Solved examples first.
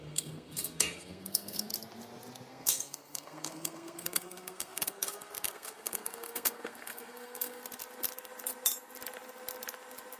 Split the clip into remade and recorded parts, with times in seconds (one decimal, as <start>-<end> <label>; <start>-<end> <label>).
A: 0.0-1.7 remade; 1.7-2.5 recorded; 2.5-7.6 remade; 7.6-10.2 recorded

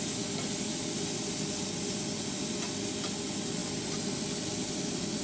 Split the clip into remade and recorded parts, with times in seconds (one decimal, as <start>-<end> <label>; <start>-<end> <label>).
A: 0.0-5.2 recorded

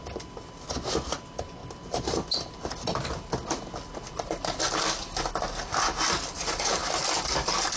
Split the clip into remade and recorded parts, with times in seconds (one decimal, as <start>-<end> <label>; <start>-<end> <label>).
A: 0.0-7.8 recorded